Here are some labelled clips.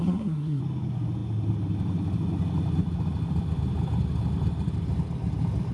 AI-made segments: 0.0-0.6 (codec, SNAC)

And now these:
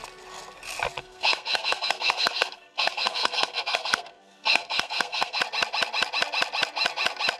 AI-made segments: 1.0-5.4 (codec, SNAC)

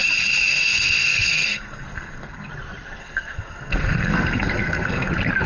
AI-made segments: 0.5-2.5 (codec, SNAC); 3.0-5.1

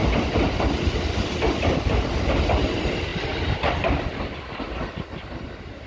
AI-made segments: none

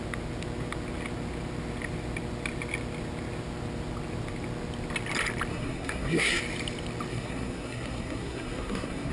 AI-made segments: 5.5-6.4 (codec, SNAC); 7.1-9.1

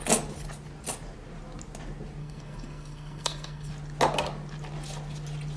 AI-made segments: 2.2-3.7 (codec, SNAC)

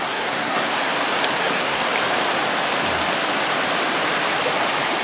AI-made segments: 0.0-0.7 (codec, SNAC); 1.4-1.8